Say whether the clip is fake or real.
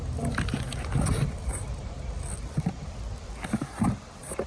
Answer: real